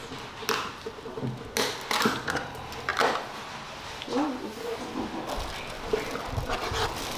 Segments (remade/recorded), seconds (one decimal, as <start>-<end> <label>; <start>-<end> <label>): 0.0-7.2 recorded